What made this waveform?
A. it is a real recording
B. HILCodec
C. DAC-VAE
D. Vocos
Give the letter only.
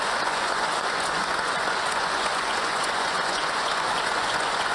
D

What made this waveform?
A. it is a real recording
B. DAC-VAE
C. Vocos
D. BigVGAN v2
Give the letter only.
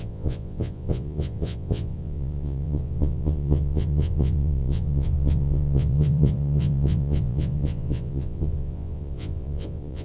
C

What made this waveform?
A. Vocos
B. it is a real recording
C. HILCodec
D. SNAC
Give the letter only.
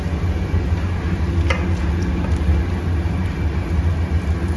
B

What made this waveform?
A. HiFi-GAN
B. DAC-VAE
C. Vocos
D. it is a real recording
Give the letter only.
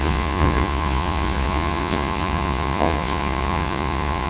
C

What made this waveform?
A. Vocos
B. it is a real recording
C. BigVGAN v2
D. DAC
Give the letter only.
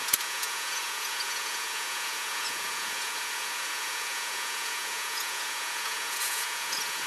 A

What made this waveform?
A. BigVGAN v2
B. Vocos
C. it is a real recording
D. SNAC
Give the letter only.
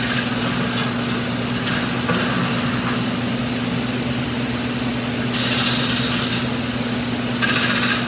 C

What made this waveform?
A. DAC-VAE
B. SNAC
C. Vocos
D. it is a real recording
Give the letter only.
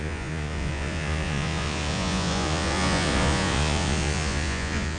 C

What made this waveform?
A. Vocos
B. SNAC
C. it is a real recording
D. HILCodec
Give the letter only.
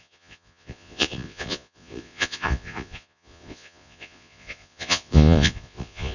A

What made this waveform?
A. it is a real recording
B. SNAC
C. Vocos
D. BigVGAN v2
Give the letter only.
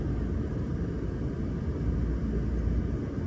A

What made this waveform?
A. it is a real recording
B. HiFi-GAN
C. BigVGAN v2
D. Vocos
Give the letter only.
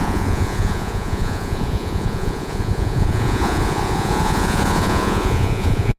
D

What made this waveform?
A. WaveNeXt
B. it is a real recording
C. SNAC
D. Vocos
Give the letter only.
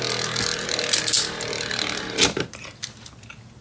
B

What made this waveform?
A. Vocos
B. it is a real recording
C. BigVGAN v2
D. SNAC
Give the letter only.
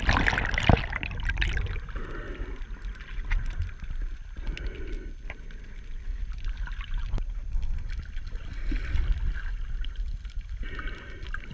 B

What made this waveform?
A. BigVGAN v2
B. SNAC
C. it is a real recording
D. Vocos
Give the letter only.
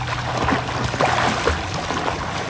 C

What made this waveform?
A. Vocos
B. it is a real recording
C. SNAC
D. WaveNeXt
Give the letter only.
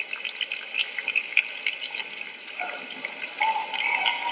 B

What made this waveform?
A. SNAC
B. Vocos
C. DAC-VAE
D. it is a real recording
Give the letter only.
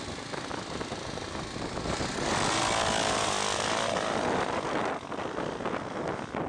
D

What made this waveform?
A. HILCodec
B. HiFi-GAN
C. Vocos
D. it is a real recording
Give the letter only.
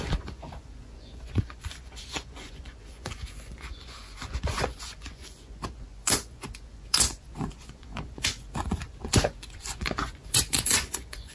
C